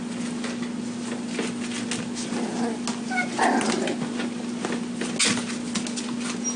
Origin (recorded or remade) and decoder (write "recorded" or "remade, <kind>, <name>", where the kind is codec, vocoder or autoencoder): recorded